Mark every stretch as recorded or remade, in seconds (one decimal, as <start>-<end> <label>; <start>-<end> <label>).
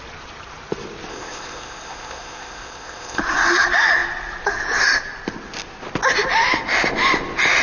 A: 0.0-1.1 recorded; 1.1-3.2 remade; 3.2-7.6 recorded